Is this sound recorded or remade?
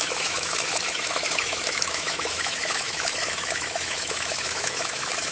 remade